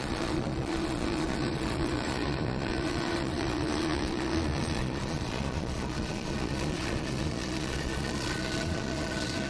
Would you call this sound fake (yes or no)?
yes